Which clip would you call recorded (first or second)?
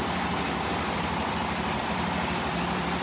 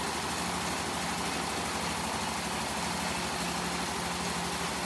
second